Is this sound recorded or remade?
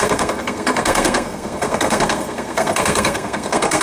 remade